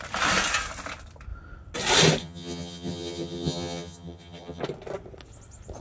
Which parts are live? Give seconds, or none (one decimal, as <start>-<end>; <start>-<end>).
0.0-2.2; 4.6-5.8